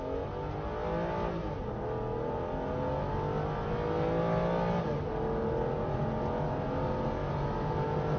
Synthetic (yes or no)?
no